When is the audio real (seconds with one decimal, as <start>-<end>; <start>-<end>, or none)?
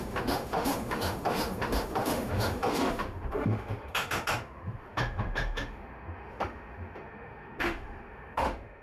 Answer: none